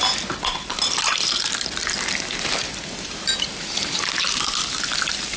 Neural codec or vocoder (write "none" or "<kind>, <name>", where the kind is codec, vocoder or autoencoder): none